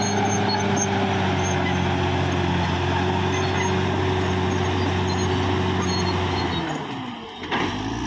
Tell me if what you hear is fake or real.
real